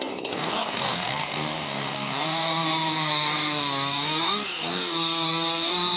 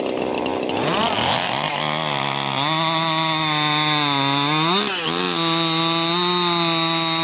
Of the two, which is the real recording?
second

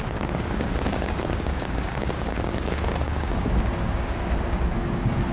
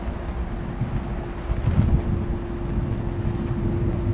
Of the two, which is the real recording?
second